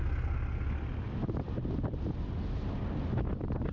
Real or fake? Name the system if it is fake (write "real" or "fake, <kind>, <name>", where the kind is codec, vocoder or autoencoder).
real